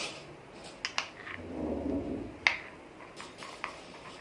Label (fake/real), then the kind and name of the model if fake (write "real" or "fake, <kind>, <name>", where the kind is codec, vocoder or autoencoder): real